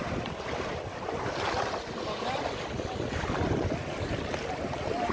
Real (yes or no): yes